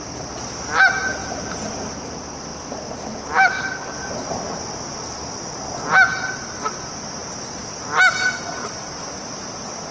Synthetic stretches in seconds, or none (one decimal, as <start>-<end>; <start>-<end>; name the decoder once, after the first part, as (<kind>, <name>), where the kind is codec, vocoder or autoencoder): none